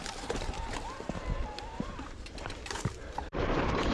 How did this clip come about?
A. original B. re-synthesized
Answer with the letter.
B